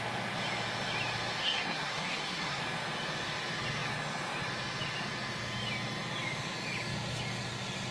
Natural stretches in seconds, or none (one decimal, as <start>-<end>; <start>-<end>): 0.0-1.4; 2.6-7.9